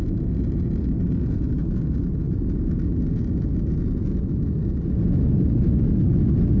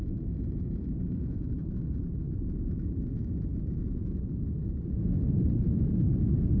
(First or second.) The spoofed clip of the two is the second